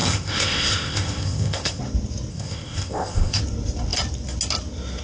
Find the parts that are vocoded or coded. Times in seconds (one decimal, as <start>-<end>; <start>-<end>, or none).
0.0-1.8; 2.3-3.4